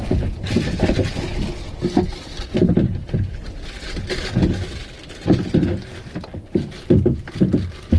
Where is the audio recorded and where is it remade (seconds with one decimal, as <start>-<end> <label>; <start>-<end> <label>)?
0.0-8.0 recorded